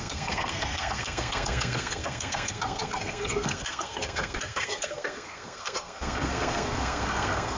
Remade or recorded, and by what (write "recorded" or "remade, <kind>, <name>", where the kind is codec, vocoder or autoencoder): remade, codec, SNAC